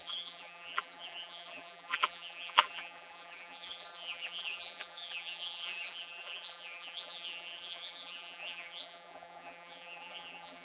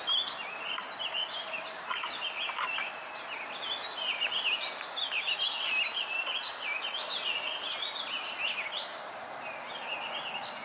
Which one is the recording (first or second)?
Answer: second